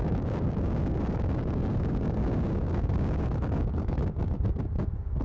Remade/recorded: remade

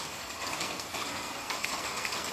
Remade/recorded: remade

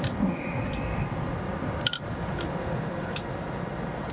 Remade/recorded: recorded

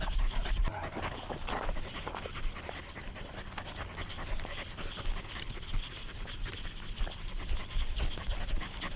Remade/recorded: recorded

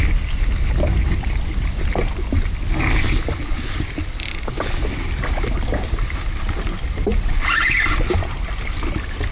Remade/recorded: recorded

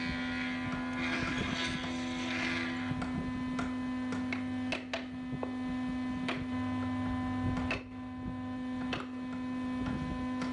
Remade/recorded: recorded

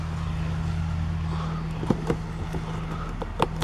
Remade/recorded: recorded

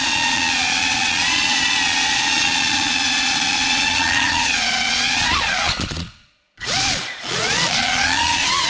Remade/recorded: remade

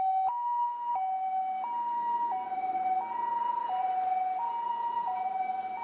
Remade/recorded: recorded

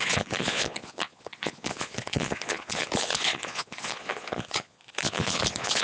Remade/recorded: remade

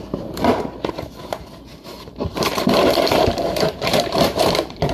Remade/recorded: remade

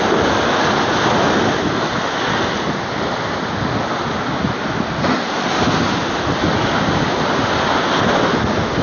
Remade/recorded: recorded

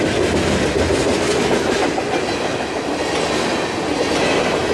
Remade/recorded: recorded